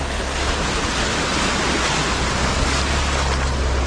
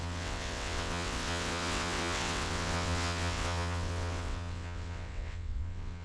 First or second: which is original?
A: first